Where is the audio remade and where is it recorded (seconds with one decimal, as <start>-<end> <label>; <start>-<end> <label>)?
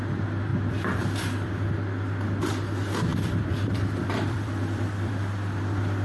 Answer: 0.0-0.5 recorded; 0.5-1.6 remade; 1.6-3.1 recorded; 3.1-5.1 remade; 5.1-6.0 recorded